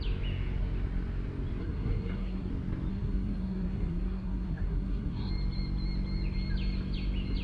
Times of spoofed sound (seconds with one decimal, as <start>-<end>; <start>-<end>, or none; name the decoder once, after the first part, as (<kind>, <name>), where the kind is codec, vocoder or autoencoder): 1.6-2.5 (codec, SNAC); 2.9-5.3